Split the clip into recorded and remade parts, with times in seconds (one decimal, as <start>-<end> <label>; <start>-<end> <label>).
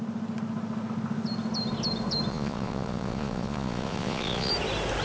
0.0-2.3 recorded; 2.3-4.5 remade; 4.5-5.0 recorded